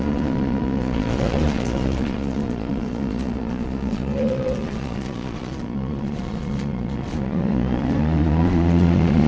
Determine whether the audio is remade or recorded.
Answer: remade